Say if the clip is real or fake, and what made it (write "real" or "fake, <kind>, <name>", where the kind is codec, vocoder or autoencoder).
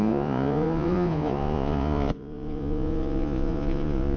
fake, vocoder, Vocos